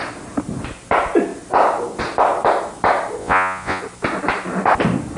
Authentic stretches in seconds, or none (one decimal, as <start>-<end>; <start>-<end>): 0.0-3.2; 3.8-5.2